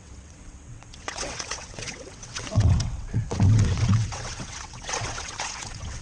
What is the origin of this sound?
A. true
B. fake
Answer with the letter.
B